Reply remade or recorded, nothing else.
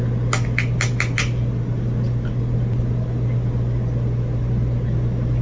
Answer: recorded